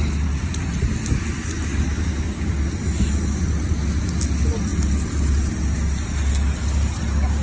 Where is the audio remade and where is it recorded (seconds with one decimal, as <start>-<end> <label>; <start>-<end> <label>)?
0.0-1.7 recorded; 1.7-2.5 remade; 2.5-7.4 recorded